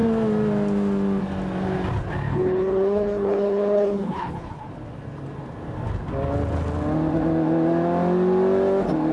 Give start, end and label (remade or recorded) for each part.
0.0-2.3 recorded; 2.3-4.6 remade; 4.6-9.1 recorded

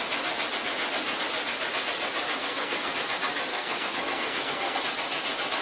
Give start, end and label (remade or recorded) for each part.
0.0-2.4 recorded; 2.4-2.9 remade; 2.9-3.5 recorded; 3.5-4.8 remade; 4.8-5.6 recorded

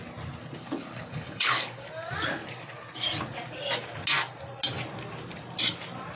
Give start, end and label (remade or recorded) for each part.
0.0-0.6 recorded; 0.6-1.9 remade; 1.9-6.2 recorded